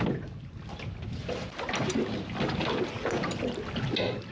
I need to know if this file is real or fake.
real